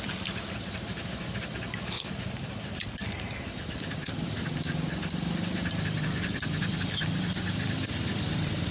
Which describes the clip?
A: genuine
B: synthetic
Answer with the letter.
B